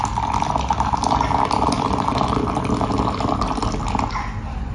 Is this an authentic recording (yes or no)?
yes